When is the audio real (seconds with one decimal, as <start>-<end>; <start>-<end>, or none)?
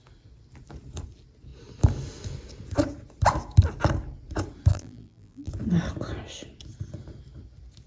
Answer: 0.0-4.7; 5.5-7.9